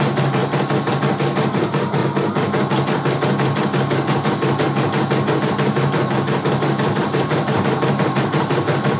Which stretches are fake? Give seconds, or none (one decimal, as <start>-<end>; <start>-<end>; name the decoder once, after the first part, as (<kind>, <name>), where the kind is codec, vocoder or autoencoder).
0.0-0.4 (vocoder, BigVGAN v2); 0.9-2.0; 5.4-9.0